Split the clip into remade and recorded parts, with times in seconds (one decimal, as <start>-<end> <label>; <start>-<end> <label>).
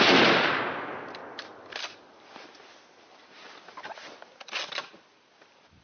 0.0-5.8 recorded